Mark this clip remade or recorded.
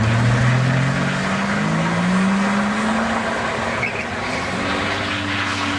recorded